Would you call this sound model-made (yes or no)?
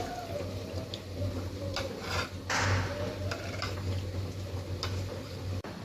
no